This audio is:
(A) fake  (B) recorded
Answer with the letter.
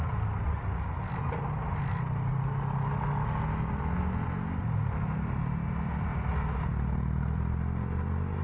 B